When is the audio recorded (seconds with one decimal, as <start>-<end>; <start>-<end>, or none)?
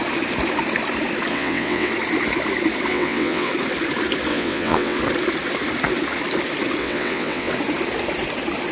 0.0-1.3; 1.9-2.9; 3.5-4.3; 5.0-6.8; 7.5-8.7